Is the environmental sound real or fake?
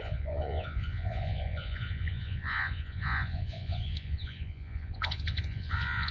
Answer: fake